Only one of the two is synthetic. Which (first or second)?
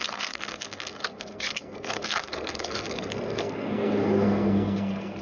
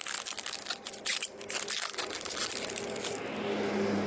first